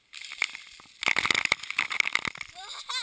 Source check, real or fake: real